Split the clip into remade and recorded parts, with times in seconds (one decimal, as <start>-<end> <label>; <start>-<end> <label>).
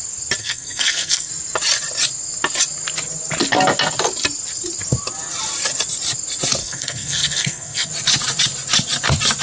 0.0-0.4 recorded; 0.4-1.3 remade; 1.3-6.6 recorded; 6.6-7.9 remade; 7.9-9.4 recorded